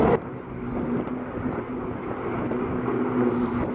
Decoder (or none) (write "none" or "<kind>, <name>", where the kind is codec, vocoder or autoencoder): none